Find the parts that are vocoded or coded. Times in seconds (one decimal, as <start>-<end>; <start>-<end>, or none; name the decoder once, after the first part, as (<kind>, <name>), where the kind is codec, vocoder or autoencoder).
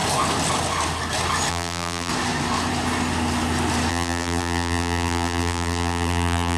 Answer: 1.5-2.1 (vocoder, BigVGAN v2); 3.9-6.6